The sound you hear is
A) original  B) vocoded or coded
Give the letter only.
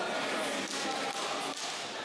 A